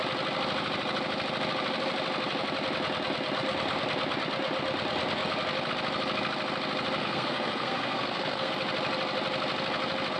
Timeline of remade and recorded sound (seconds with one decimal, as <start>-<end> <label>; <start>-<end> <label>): 0.0-7.0 recorded; 7.0-8.5 remade; 8.5-10.2 recorded